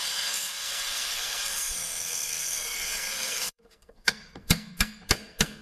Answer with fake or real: fake